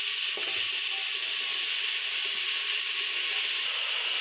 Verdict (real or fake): real